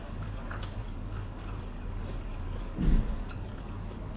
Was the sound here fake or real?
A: fake